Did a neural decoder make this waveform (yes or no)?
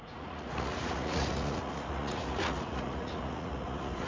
yes